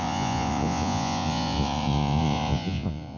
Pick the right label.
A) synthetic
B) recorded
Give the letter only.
A